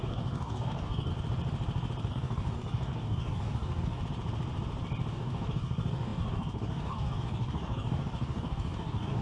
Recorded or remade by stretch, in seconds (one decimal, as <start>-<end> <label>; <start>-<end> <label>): 0.0-1.1 remade; 1.1-2.1 recorded; 2.1-4.0 remade; 4.0-5.1 recorded; 5.1-9.2 remade